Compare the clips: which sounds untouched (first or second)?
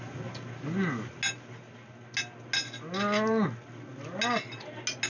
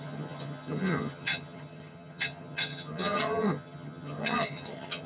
first